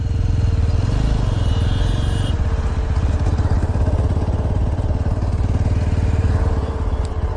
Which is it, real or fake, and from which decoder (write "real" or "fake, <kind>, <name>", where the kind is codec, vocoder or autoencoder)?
real